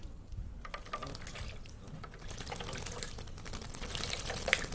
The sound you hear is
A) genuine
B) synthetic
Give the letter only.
A